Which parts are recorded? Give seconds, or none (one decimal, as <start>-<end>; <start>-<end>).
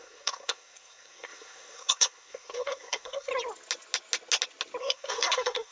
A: 3.3-4.8